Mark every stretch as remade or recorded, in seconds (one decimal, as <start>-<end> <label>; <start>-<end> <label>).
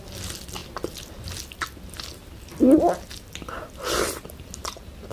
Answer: 0.0-5.1 recorded